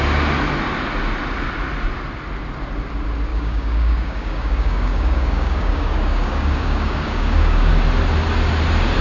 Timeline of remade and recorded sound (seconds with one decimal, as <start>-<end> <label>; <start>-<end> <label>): 0.0-3.3 recorded; 3.3-7.7 remade; 7.7-9.0 recorded